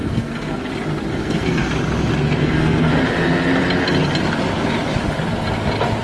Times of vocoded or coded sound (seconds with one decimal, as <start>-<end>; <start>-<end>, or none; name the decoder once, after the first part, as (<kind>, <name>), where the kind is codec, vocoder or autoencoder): 0.0-0.7 (codec, SNAC); 1.1-1.7; 2.4-2.9